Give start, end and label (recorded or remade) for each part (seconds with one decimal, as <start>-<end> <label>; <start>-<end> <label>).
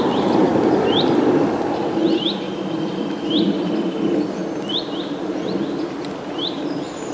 0.0-0.5 remade; 0.5-1.7 recorded; 1.7-4.4 remade; 4.4-5.9 recorded; 5.9-7.1 remade